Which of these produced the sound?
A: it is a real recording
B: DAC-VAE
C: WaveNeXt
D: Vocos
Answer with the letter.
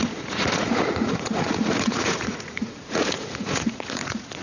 D